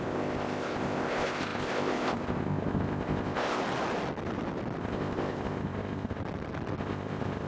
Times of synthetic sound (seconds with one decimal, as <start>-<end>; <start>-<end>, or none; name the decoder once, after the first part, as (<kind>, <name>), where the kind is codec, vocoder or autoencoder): 0.0-3.6 (codec, ZipCodec); 4.8-6.2; 6.8-7.5